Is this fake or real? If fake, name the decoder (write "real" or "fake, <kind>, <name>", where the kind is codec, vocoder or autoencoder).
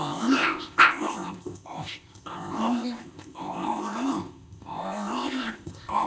fake, codec, ZipCodec